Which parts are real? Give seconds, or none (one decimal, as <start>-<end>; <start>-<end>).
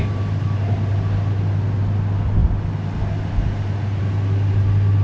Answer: 0.0-5.0